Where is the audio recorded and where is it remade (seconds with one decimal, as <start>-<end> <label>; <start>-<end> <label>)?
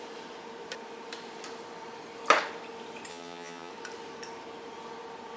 0.0-3.1 recorded; 3.1-3.7 remade; 3.7-5.4 recorded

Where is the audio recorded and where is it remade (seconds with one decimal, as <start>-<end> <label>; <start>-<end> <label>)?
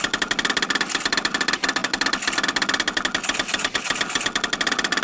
0.0-5.0 recorded